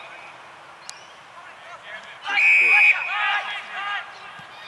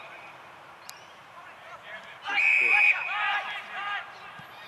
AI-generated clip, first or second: second